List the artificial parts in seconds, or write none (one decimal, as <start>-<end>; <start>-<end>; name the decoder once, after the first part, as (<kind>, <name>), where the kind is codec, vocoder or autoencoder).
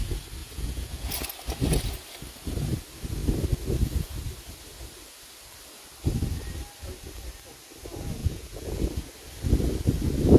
0.4-1.1 (vocoder, Vocos); 8.2-8.8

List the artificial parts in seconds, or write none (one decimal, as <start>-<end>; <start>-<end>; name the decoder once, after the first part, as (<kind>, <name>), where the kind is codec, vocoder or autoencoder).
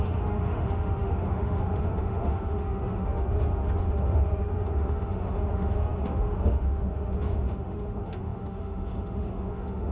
0.0-9.9 (autoencoder, DAC-VAE)